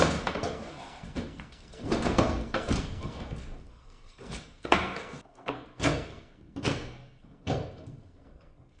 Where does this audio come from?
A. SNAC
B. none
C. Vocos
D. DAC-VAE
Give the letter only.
A